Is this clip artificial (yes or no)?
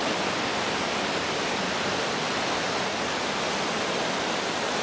yes